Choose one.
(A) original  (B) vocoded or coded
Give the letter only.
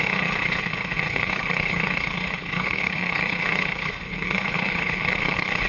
B